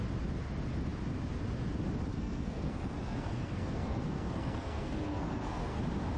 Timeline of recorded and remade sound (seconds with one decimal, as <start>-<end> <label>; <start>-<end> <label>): 0.0-2.1 recorded; 2.1-5.8 remade; 5.8-6.2 recorded